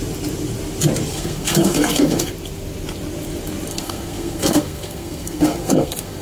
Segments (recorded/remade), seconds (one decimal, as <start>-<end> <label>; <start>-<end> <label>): 0.0-1.1 recorded; 1.1-2.3 remade; 2.3-3.7 recorded; 3.7-6.2 remade